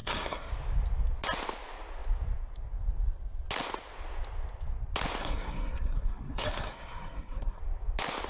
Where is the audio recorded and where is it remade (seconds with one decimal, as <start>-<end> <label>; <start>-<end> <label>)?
0.0-0.5 remade; 0.5-5.2 recorded; 5.2-7.6 remade; 7.6-8.3 recorded